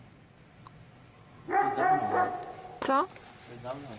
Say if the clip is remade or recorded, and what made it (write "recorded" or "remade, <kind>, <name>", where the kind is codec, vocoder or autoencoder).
recorded